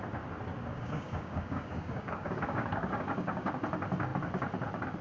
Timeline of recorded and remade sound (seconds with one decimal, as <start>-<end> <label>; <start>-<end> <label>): 0.0-0.7 recorded; 0.7-3.5 remade; 3.5-5.0 recorded